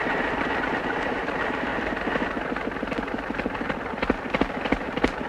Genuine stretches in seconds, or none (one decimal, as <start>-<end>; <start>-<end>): 1.7-5.3

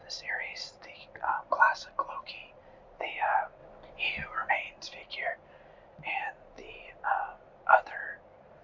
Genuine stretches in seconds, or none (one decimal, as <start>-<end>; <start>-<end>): 0.0-0.7; 3.6-4.5

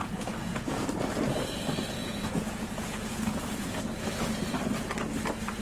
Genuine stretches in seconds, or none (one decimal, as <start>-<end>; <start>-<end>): 0.8-2.0; 3.8-5.6

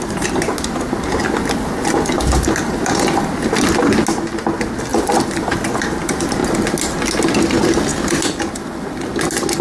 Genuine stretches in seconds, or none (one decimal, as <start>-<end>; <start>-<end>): 0.0-4.9; 5.7-9.6